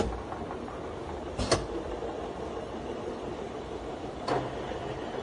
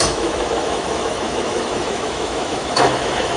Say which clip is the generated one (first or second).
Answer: second